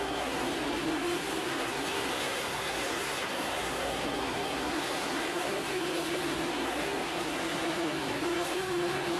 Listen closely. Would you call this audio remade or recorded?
remade